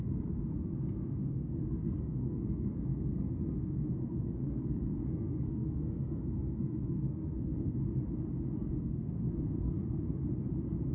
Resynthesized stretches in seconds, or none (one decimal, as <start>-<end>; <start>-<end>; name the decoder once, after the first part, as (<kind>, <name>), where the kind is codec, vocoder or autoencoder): 0.0-7.9 (codec, SNAC); 8.7-10.2